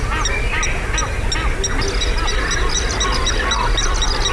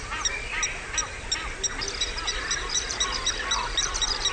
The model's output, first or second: second